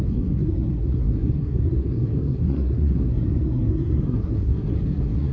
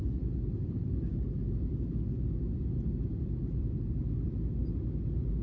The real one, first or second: second